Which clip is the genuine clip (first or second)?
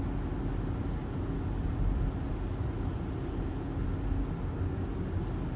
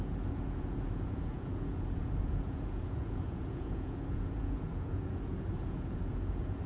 first